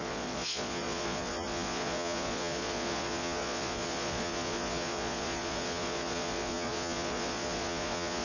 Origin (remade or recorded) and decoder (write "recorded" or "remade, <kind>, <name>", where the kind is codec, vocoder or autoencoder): remade, vocoder, Vocos